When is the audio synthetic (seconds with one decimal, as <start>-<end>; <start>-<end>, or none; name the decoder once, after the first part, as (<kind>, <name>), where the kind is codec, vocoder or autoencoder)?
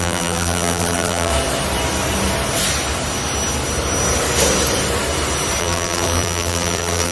0.0-1.3 (vocoder, BigVGAN v2); 5.6-7.1